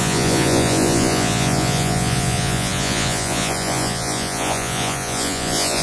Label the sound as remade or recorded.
remade